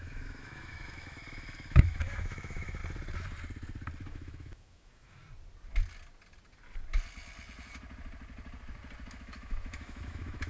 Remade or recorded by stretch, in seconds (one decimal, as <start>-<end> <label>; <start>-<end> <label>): 0.0-2.8 remade; 2.8-4.1 recorded; 4.1-5.2 remade; 5.2-9.1 recorded; 9.1-10.5 remade